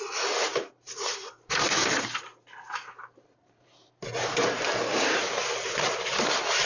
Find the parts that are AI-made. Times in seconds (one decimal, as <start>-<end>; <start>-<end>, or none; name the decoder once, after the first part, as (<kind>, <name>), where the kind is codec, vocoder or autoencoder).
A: 0.0-6.7 (vocoder, BigVGAN v2)